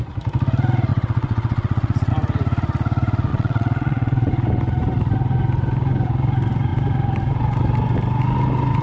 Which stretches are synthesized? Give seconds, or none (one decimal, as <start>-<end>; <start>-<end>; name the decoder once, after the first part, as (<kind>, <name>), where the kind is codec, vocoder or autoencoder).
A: 0.9-2.1 (vocoder, WaveNeXt); 3.3-4.3

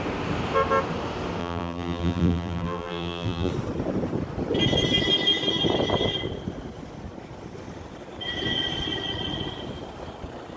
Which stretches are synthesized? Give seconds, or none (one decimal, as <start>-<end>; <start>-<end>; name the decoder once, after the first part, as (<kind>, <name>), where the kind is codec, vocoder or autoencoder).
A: 1.4-3.5 (vocoder, BigVGAN v2)

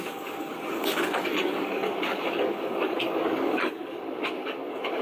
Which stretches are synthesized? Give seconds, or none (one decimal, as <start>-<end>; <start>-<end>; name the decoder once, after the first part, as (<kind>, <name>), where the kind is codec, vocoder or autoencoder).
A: 0.0-5.0 (codec, DAC)

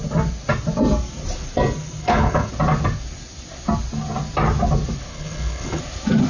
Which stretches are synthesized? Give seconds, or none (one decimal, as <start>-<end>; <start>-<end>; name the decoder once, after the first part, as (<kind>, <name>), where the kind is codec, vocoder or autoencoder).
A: 2.0-2.5 (codec, HILCodec); 5.1-5.8

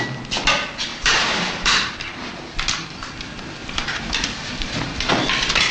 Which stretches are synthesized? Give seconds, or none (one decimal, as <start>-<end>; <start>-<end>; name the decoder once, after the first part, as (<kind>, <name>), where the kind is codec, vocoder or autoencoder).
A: 0.9-2.3 (vocoder, BigVGAN v2); 3.6-5.1

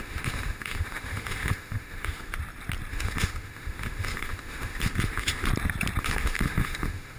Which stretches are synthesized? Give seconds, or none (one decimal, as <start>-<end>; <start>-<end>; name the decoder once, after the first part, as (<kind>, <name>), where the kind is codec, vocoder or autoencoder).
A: 0.0-2.3 (autoencoder, DAC-VAE); 2.9-5.5; 6.0-7.2

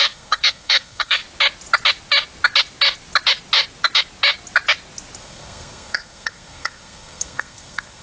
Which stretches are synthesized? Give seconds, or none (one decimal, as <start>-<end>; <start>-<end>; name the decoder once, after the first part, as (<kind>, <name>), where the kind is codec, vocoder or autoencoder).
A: 0.0-1.2 (codec, SNAC); 5.2-8.0

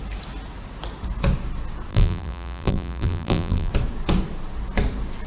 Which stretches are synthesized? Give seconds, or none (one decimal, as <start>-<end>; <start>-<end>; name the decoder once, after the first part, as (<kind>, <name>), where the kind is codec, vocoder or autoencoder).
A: 1.9-3.7 (vocoder, BigVGAN v2)